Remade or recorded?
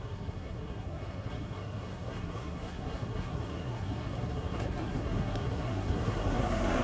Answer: remade